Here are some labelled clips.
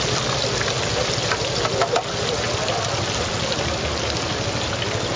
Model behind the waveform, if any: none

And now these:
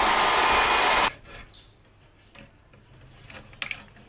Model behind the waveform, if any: none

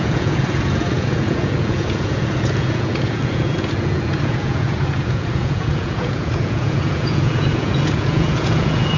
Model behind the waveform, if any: vocoder, Vocos